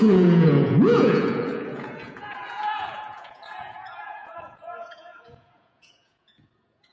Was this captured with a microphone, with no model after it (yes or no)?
no